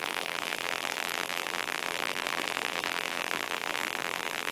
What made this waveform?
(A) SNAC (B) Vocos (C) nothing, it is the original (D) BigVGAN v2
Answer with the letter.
D